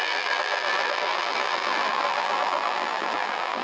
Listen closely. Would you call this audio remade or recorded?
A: remade